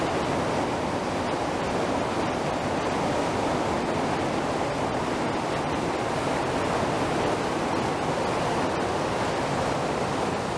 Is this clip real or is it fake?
real